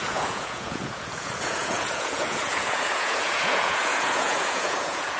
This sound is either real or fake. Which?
fake